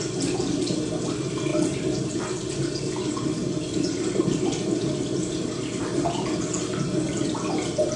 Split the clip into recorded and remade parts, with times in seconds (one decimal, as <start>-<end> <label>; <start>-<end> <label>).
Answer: 0.0-8.0 recorded